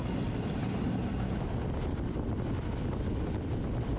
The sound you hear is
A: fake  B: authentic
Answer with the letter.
B